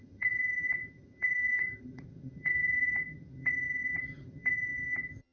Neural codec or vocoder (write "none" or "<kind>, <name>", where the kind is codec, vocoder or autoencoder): vocoder, HiFi-GAN